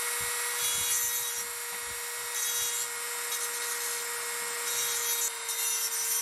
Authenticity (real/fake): real